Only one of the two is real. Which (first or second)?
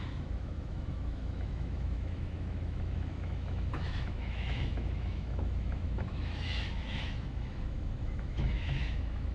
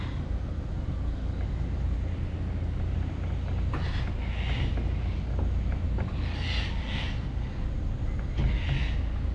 second